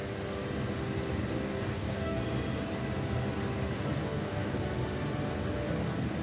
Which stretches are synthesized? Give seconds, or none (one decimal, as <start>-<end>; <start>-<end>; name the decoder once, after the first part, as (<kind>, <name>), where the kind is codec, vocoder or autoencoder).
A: 1.5-2.2 (codec, DAC); 4.0-4.6